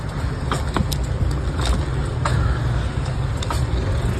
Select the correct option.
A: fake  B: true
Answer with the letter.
B